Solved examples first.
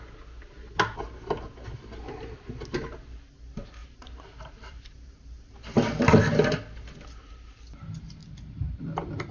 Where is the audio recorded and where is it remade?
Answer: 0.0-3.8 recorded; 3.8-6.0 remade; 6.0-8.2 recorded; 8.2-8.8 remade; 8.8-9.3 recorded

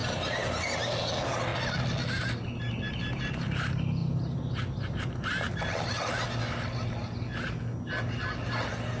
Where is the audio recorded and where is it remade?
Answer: 0.0-0.5 remade; 0.5-4.0 recorded; 4.0-5.6 remade; 5.6-9.0 recorded

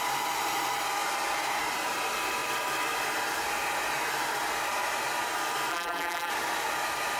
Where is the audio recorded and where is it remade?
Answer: 0.0-5.7 recorded; 5.7-6.3 remade; 6.3-7.2 recorded

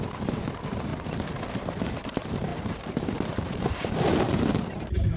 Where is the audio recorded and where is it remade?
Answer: 0.0-0.9 remade; 0.9-1.5 recorded; 1.5-5.2 remade